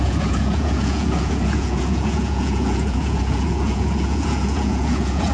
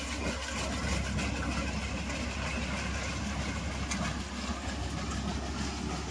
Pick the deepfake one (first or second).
first